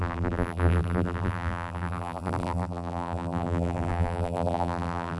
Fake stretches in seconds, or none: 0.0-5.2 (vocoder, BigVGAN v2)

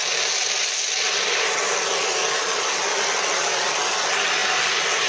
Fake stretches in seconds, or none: 0.0-3.1 (vocoder, BigVGAN v2); 4.4-5.1

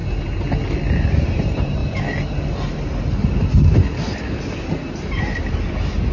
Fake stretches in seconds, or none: 1.1-1.8 (vocoder, BigVGAN v2); 5.5-6.1